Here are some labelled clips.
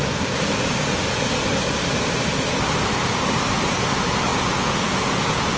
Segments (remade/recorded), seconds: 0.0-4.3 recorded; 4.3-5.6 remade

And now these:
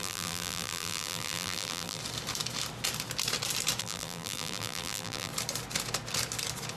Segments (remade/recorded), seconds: 0.0-2.0 remade; 2.0-3.8 recorded; 3.8-5.3 remade; 5.3-6.8 recorded

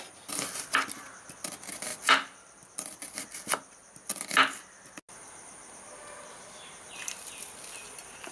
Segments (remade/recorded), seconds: 0.0-8.3 recorded

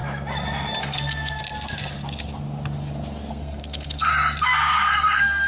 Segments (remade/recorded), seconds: 0.0-0.8 recorded; 0.8-1.4 remade; 1.4-3.3 recorded; 3.3-4.1 remade; 4.1-4.9 recorded; 4.9-5.5 remade

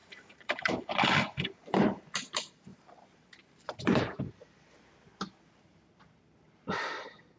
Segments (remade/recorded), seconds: 0.0-0.8 remade; 0.8-2.7 recorded; 2.7-4.2 remade; 4.2-7.4 recorded

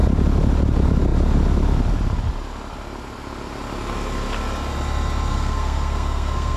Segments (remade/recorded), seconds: 0.0-5.3 recorded; 5.3-6.6 remade

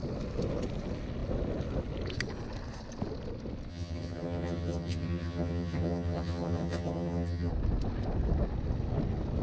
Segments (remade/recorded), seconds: 0.0-3.7 recorded; 3.7-7.5 remade; 7.5-9.4 recorded

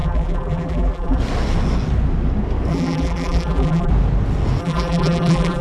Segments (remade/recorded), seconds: 0.0-1.2 remade; 1.2-2.7 recorded; 2.7-3.9 remade; 3.9-4.6 recorded; 4.6-5.6 remade